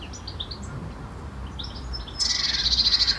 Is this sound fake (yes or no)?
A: no